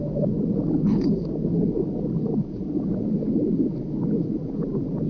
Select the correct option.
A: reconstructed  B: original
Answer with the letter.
B